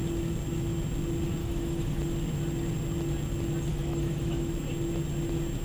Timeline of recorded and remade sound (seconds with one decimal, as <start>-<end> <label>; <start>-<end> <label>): 0.0-1.4 recorded; 1.4-2.0 remade; 2.0-3.7 recorded; 3.7-4.5 remade; 4.5-5.6 recorded

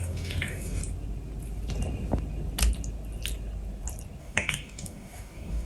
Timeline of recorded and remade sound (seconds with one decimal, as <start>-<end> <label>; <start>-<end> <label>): 0.0-0.8 remade; 0.8-4.2 recorded; 4.2-5.7 remade

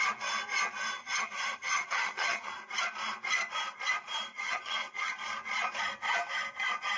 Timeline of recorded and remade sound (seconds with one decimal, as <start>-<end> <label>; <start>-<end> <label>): 0.0-1.0 recorded; 1.0-2.5 remade; 2.5-4.3 recorded; 4.3-5.1 remade; 5.1-7.0 recorded

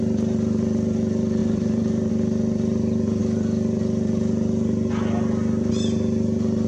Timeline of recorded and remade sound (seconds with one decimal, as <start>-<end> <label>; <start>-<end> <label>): 0.0-1.4 recorded; 1.4-2.1 remade; 2.1-6.7 recorded

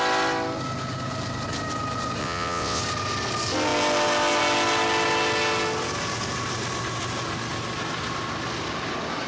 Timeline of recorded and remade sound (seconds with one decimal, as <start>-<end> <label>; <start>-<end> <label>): 0.0-2.2 recorded; 2.2-2.8 remade; 2.8-9.3 recorded

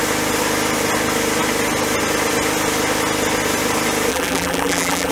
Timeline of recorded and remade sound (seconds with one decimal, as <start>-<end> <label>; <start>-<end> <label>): 0.0-4.1 recorded; 4.1-5.1 remade

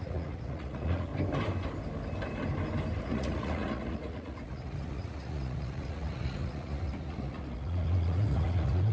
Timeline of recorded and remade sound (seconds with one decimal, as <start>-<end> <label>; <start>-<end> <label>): 0.0-1.1 remade; 1.1-3.0 recorded; 3.0-8.9 remade

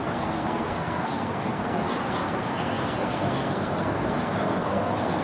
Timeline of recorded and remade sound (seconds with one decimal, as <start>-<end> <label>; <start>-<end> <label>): 0.0-5.2 remade